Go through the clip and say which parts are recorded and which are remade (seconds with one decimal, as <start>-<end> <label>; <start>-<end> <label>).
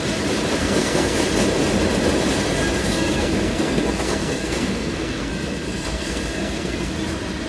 0.0-0.6 recorded; 0.6-1.2 remade; 1.2-2.8 recorded; 2.8-5.3 remade; 5.3-5.7 recorded; 5.7-6.9 remade; 6.9-7.5 recorded